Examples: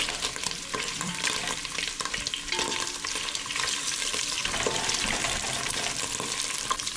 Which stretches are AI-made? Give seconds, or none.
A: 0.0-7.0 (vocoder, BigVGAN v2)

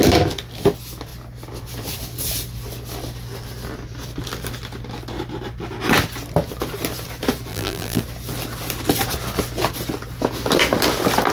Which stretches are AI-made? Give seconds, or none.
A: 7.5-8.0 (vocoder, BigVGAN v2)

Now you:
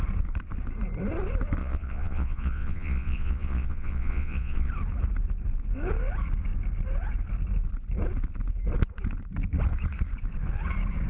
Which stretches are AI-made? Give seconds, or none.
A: 1.6-4.7 (vocoder, Vocos)

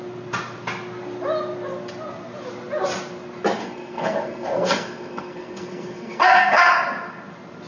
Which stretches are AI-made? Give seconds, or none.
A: 3.6-6.7 (codec, SNAC)

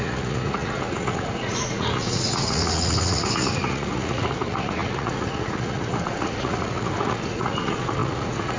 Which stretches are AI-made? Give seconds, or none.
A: 0.0-8.6 (vocoder, Vocos)

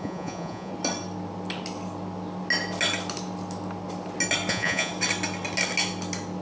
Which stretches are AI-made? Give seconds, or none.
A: 0.0-0.7 (vocoder, Vocos); 4.5-4.9